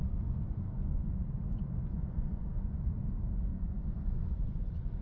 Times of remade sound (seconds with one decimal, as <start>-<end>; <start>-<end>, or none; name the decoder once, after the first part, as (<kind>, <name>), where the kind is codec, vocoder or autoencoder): 0.0-3.0 (vocoder, Vocos); 3.5-5.0